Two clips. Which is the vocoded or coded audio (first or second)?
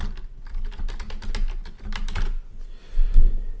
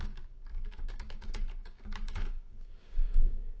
second